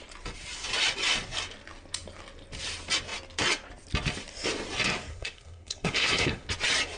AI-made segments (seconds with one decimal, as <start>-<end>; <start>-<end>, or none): 5.1-6.5